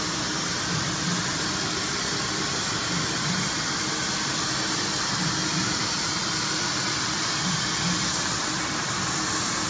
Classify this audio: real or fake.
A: real